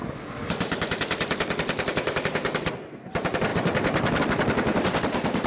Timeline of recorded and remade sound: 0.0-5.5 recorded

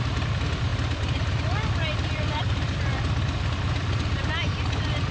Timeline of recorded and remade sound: 0.0-5.1 recorded

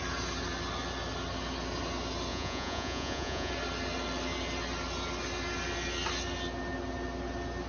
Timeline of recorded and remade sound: 0.0-2.3 recorded; 2.3-3.5 remade; 3.5-7.7 recorded

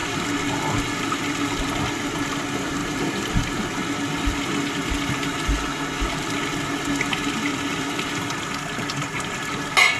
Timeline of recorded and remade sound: 0.0-1.8 remade; 1.8-2.8 recorded; 2.8-3.8 remade; 3.8-7.5 recorded; 7.5-8.1 remade; 8.1-10.0 recorded

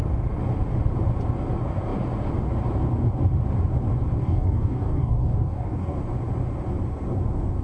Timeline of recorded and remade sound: 0.0-4.2 recorded; 4.2-6.0 remade; 6.0-7.6 recorded

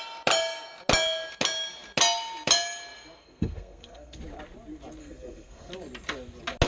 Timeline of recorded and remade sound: 0.0-3.2 recorded; 3.2-4.2 remade; 4.2-5.0 recorded; 5.0-5.7 remade; 5.7-6.7 recorded

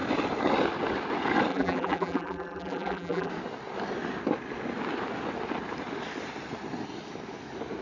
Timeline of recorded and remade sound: 0.0-1.5 recorded; 1.5-3.3 remade; 3.3-7.8 recorded

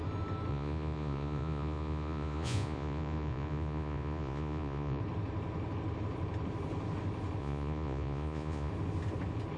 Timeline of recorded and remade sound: 0.0-0.5 recorded; 0.5-5.0 remade; 5.0-7.4 recorded; 7.4-8.7 remade; 8.7-9.6 recorded